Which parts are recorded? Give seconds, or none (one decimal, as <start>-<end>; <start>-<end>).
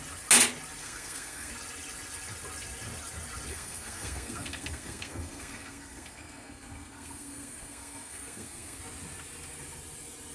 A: 0.0-0.8; 1.5-3.5; 8.8-10.3